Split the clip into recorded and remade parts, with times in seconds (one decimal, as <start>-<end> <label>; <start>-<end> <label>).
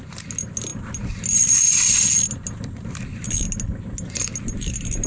0.0-5.1 recorded